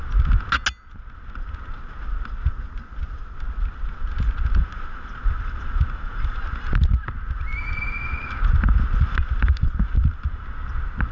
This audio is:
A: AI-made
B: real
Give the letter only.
B